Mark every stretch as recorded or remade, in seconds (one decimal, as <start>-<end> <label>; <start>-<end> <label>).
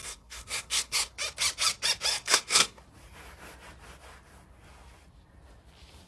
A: 0.0-1.1 remade; 1.1-2.1 recorded; 2.1-2.8 remade; 2.8-6.1 recorded